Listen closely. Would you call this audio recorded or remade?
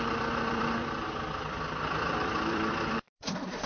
remade